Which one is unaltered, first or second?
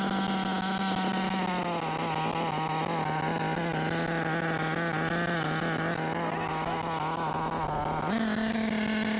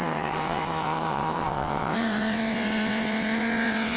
first